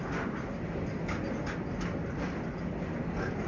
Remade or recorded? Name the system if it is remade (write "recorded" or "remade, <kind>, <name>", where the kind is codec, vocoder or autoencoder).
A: recorded